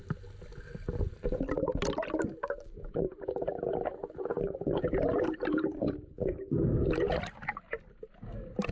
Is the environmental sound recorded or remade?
recorded